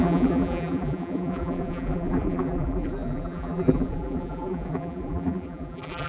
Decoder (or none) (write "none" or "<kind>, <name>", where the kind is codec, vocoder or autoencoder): vocoder, BigVGAN v2